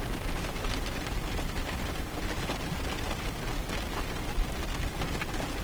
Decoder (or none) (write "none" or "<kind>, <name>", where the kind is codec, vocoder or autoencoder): none